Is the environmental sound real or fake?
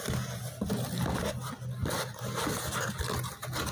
real